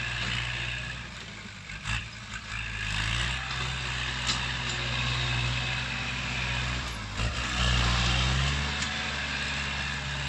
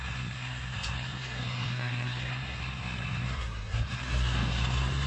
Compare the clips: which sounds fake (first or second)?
second